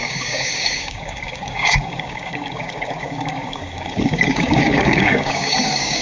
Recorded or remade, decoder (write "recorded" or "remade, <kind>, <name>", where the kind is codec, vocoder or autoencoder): remade, codec, DAC